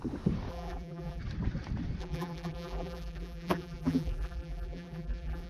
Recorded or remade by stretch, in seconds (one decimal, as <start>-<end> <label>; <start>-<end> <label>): 0.0-0.5 recorded; 0.5-1.2 remade; 1.2-2.0 recorded; 2.0-5.5 remade